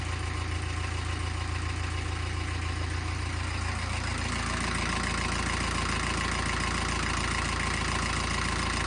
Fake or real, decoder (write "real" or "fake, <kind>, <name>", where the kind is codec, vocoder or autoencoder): real